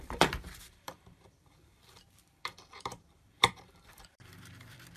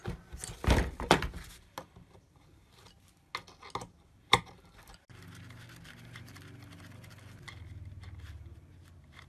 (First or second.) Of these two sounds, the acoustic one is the second